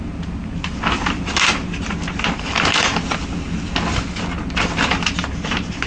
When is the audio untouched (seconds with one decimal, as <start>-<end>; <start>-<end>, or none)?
2.9-5.1